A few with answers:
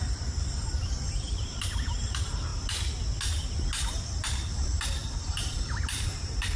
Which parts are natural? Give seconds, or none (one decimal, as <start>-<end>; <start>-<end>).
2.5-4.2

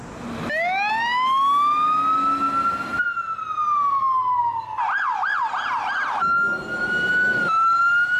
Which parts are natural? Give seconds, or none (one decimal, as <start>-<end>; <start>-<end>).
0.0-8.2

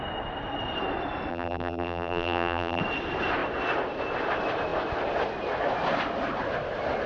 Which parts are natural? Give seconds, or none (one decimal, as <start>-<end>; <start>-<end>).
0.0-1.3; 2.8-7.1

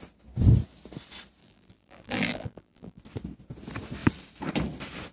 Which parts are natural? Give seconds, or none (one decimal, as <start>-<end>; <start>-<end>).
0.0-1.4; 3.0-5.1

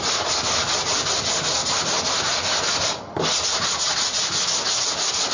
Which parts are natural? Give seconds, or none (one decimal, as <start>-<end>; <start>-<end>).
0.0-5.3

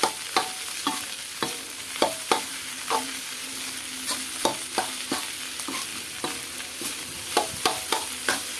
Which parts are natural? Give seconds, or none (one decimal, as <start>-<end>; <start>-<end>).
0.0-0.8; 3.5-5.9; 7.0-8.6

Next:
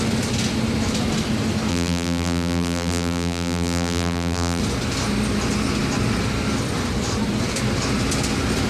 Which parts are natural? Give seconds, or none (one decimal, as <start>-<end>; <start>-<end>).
0.0-1.7; 4.6-8.7